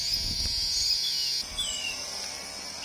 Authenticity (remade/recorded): recorded